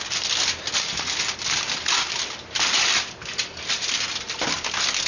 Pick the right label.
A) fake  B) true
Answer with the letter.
B